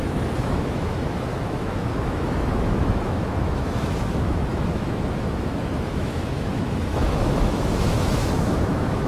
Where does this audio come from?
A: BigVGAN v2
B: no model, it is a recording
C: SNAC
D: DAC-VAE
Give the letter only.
D